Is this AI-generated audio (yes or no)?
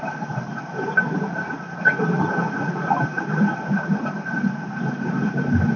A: no